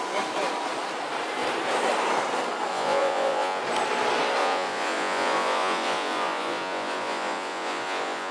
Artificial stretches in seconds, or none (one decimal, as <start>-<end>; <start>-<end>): 2.7-3.6; 4.4-8.3

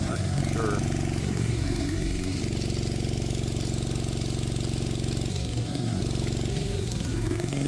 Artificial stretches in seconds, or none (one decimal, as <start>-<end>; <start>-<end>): 0.0-0.4; 1.2-2.4; 5.3-6.0; 6.5-7.7

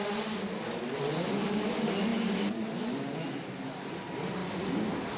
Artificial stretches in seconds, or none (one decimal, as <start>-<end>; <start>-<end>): none

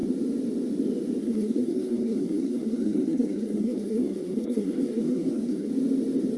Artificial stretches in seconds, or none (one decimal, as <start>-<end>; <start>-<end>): 1.2-5.7

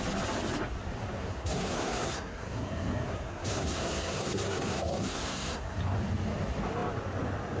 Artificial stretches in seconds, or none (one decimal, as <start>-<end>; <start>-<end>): 1.2-5.8

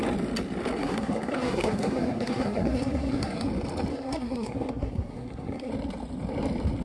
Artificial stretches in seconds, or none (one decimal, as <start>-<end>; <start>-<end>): 0.8-3.5; 3.9-5.7

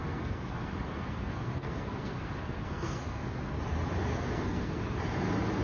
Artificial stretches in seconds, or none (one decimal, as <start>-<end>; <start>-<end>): 0.0-3.4; 4.1-4.8

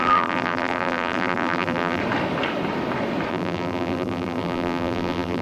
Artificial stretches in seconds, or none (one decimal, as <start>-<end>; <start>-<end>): 0.0-2.0; 3.3-5.4